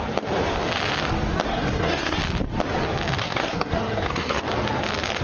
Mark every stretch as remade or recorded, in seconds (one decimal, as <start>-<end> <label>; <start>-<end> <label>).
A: 0.0-1.5 recorded; 1.5-2.2 remade; 2.2-3.2 recorded; 3.2-4.4 remade; 4.4-5.2 recorded